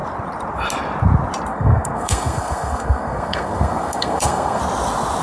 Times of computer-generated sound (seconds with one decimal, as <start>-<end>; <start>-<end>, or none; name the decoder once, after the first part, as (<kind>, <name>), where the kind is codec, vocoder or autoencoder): 1.5-4.6 (codec, SNAC)